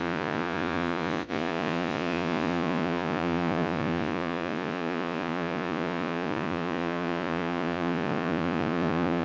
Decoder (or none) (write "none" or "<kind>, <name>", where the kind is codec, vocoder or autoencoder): vocoder, Vocos